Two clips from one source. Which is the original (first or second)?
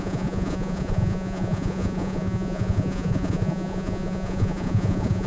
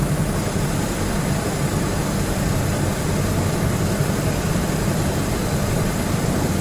second